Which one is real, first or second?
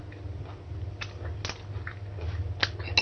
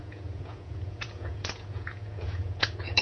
first